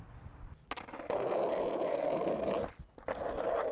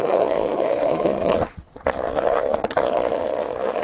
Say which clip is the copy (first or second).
second